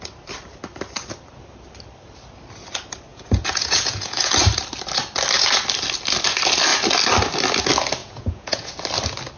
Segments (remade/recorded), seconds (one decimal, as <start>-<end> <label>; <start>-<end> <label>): 0.0-3.1 recorded; 3.1-4.3 remade; 4.3-8.0 recorded; 8.0-8.7 remade; 8.7-9.4 recorded